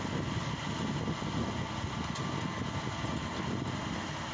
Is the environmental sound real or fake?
real